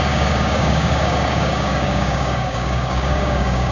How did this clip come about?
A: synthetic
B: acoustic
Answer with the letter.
A